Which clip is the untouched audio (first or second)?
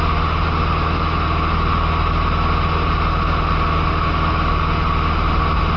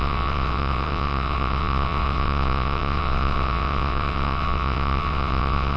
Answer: first